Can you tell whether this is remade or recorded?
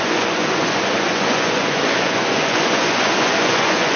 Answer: remade